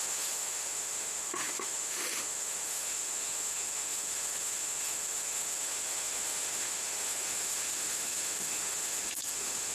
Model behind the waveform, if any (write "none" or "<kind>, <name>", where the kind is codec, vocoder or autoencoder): autoencoder, DAC-VAE